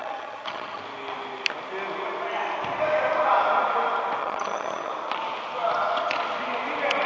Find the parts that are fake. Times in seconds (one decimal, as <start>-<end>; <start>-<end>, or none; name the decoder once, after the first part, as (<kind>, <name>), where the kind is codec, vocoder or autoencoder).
0.0-0.8 (vocoder, HiFi-GAN); 4.2-4.9